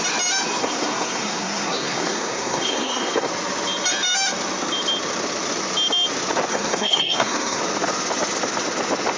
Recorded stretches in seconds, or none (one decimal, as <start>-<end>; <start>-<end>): 0.0-0.6; 3.3-6.5; 7.6-9.2